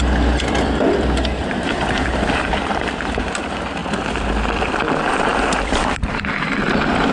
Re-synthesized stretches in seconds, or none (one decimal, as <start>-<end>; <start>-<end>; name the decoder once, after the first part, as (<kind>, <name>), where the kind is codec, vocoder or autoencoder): 0.0-7.1 (vocoder, BigVGAN v2)